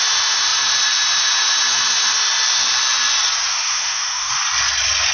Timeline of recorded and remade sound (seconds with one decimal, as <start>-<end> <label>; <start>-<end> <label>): 0.0-3.5 recorded; 3.5-4.3 remade; 4.3-5.1 recorded